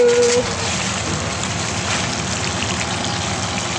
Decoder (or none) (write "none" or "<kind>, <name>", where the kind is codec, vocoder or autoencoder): none